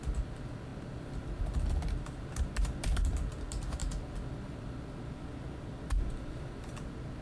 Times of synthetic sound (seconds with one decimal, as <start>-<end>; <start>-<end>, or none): 0.0-7.2